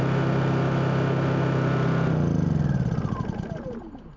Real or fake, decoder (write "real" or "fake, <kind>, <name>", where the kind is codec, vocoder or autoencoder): real